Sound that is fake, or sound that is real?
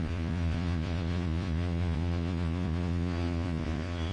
fake